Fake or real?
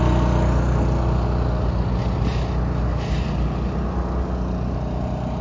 real